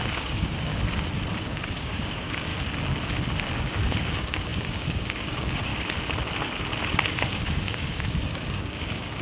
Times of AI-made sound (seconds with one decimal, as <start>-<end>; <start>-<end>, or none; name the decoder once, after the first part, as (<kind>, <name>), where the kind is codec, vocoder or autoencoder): 0.0-0.7 (codec, DAC); 1.3-2.5; 3.4-5.7; 7.3-9.2